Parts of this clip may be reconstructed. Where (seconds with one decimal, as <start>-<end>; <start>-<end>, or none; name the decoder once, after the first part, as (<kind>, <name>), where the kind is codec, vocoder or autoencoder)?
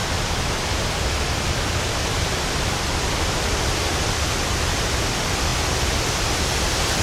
0.0-4.2 (vocoder, BigVGAN v2)